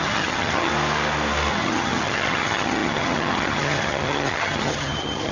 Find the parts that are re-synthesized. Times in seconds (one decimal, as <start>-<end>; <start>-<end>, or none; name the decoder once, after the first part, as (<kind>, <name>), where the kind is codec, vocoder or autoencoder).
0.0-0.7 (vocoder, HiFi-GAN); 1.5-5.3